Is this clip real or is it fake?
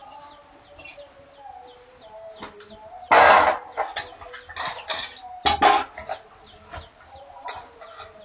real